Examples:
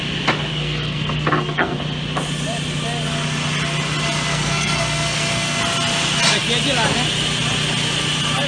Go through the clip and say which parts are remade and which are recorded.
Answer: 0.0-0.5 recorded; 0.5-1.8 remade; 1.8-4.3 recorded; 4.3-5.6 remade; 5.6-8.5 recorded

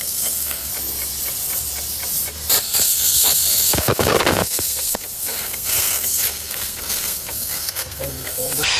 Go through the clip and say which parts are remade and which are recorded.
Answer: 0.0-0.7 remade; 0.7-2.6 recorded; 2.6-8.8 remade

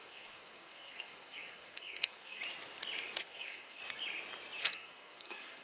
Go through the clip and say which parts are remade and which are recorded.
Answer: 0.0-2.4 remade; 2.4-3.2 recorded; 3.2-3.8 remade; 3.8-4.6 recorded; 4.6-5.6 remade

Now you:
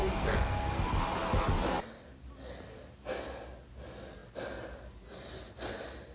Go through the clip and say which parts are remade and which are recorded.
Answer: 0.0-0.9 remade; 0.9-6.1 recorded